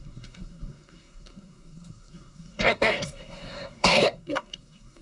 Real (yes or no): no